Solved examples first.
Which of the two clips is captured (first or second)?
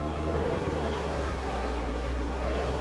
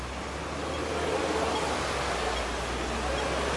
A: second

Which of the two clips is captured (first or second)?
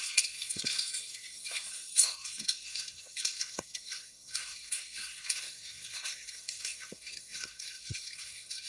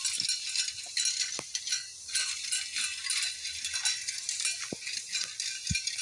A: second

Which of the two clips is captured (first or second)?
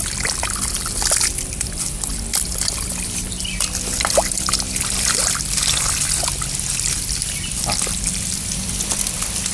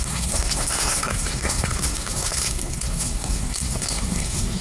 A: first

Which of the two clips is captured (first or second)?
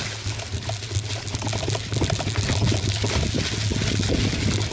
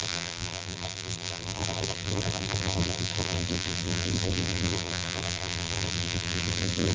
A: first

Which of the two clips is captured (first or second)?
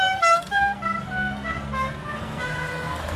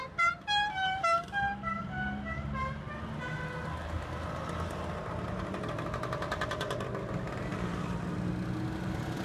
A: second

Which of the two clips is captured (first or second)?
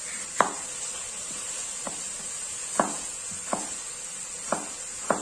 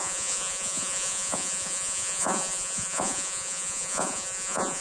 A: first